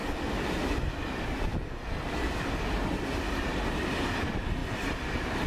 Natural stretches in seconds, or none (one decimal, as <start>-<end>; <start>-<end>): 0.0-5.5